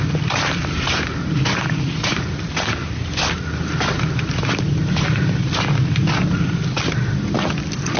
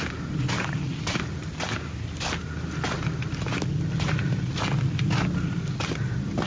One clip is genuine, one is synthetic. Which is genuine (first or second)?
second